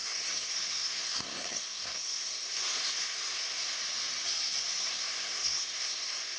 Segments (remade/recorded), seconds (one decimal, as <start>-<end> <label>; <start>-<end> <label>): 0.0-3.8 remade; 3.8-4.8 recorded; 4.8-6.4 remade